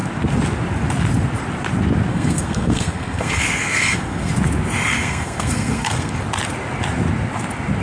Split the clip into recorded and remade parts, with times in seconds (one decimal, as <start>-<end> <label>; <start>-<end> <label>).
0.0-2.1 recorded; 2.1-4.3 remade; 4.3-4.9 recorded; 4.9-6.1 remade; 6.1-7.8 recorded